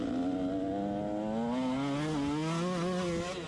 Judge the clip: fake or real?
real